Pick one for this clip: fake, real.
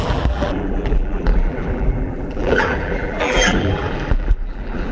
fake